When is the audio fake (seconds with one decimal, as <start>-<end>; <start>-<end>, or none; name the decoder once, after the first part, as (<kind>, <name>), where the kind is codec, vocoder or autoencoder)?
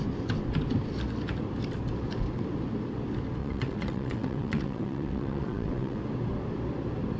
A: 3.4-6.0 (vocoder, WaveNeXt)